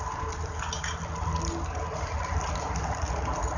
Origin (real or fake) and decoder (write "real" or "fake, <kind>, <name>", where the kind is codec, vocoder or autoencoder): real